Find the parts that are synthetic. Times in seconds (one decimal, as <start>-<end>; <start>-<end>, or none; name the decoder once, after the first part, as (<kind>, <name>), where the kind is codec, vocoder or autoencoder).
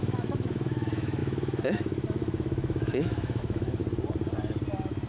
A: 0.0-3.8 (autoencoder, DAC-VAE)